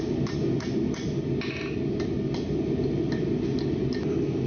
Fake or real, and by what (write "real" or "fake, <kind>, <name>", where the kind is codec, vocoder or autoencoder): real